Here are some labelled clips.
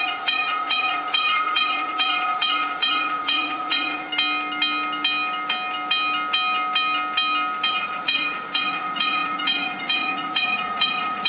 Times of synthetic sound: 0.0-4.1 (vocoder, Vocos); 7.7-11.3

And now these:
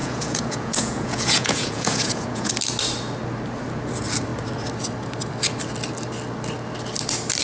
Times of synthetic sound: 0.0-2.5 (vocoder, Vocos)